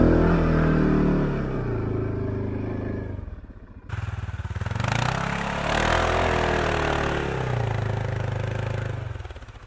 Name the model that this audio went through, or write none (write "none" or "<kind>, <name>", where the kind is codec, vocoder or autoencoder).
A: none